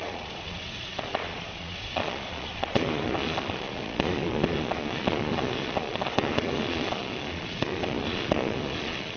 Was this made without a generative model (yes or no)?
no